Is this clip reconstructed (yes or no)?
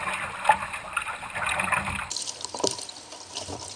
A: no